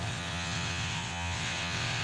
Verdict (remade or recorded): remade